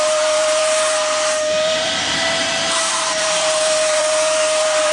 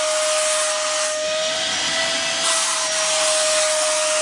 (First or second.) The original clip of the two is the second